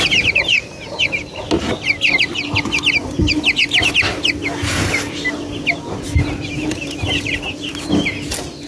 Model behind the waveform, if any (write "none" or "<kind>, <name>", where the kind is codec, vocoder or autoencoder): none